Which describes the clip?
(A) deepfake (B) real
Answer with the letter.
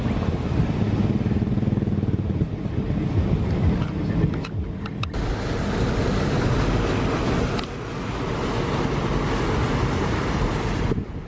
B